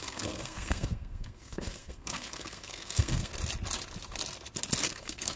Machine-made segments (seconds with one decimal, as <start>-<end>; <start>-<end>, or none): 0.0-3.3; 4.9-5.4